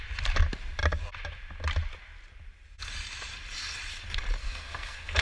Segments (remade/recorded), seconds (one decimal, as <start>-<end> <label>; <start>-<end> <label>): 0.0-4.4 recorded; 4.4-5.2 remade